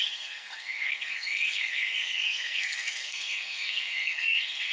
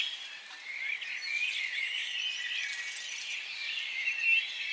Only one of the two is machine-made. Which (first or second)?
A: first